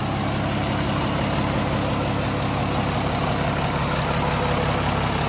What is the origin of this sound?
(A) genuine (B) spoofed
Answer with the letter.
A